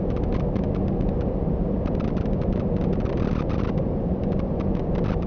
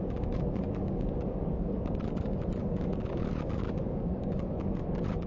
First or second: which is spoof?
second